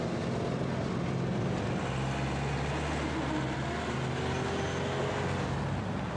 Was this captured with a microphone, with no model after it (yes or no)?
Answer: yes